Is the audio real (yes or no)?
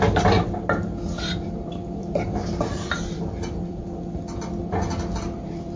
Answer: no